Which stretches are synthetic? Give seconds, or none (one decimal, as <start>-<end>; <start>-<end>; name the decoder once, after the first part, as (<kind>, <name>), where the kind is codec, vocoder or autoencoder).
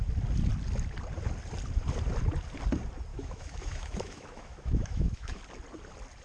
3.1-5.4 (autoencoder, DAC-VAE)